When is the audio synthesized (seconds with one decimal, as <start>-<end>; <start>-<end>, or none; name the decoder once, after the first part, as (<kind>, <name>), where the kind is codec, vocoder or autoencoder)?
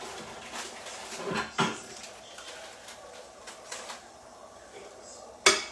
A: none